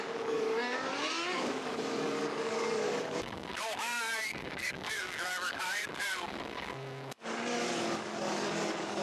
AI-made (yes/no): yes